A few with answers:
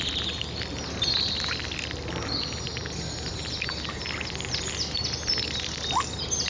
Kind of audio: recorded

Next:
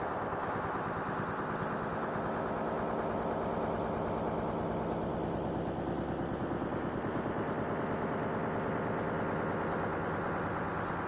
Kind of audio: recorded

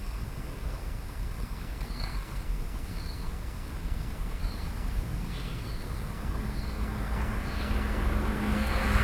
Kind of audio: remade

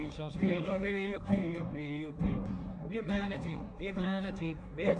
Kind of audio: remade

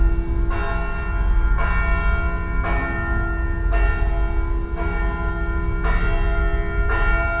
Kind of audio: recorded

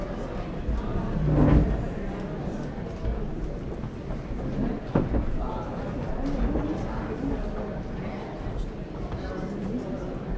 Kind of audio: recorded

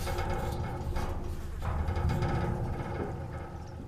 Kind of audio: recorded